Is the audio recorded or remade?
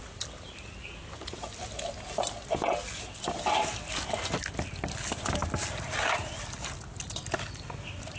recorded